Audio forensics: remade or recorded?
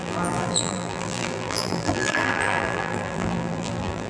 remade